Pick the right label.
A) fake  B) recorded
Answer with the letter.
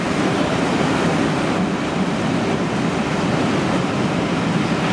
B